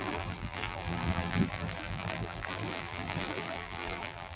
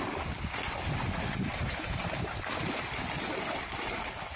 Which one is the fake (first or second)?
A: first